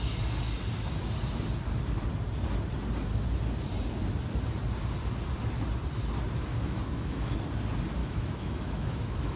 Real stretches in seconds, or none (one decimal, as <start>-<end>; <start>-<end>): 0.0-6.5; 7.4-8.0